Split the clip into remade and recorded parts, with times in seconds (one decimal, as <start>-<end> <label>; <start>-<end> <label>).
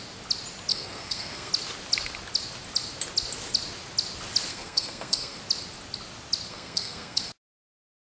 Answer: 0.0-0.7 recorded; 0.7-1.5 remade; 1.5-4.5 recorded; 4.5-5.4 remade; 5.4-6.5 recorded; 6.5-7.3 remade; 7.3-8.0 recorded